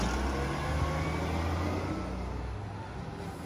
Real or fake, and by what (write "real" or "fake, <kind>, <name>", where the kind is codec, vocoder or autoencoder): real